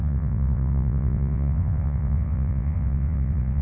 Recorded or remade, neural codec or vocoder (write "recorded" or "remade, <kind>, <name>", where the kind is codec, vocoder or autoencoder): remade, vocoder, WaveNeXt